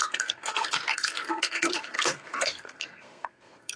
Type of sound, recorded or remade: remade